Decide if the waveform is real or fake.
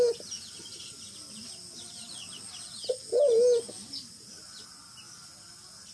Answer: real